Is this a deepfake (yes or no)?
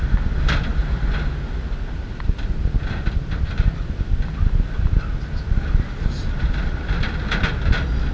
no